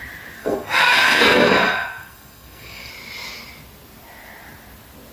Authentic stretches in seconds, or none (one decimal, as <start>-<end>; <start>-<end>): 0.0-0.4; 2.9-5.1

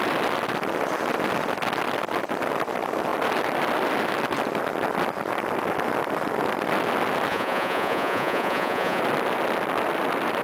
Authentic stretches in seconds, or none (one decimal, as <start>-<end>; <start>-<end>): 0.0-7.3; 9.0-10.4

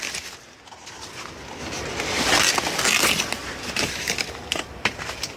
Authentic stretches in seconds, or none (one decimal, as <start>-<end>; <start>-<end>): 0.0-1.6; 2.4-3.4